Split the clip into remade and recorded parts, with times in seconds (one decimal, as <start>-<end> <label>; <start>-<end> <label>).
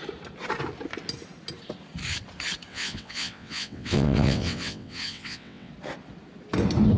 0.0-2.7 recorded; 2.7-5.7 remade; 5.7-7.0 recorded